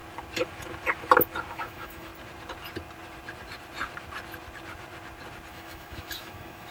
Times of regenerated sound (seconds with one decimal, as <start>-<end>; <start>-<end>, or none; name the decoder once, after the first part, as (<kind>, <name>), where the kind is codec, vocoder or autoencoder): 1.5-2.1 (autoencoder, DAC-VAE); 5.5-6.7

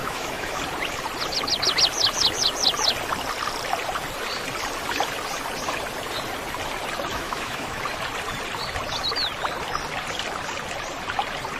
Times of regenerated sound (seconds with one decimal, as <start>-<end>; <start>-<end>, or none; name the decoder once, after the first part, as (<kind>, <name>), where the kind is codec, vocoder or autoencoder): 0.0-0.6 (autoencoder, DAC-VAE); 7.1-7.8

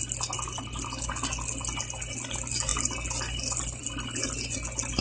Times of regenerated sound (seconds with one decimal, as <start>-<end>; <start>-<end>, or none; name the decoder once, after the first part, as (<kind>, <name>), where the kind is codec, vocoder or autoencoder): none

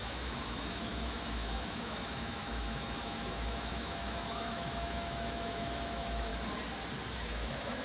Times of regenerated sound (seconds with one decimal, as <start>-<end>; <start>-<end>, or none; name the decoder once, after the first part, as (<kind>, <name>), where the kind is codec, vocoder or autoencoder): 0.0-6.3 (autoencoder, DAC-VAE); 7.1-7.8

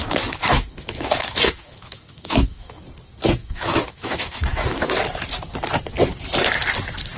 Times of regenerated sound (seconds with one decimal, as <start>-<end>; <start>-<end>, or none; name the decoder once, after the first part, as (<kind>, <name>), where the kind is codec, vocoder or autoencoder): 0.4-2.8 (autoencoder, DAC-VAE); 3.4-4.9